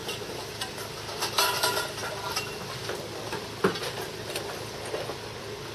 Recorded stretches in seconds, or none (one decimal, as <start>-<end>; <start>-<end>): 0.0-5.7